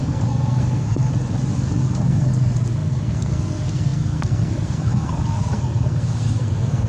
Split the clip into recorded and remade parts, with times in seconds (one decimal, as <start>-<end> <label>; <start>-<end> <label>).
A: 0.0-1.1 remade; 1.1-1.6 recorded; 1.6-6.9 remade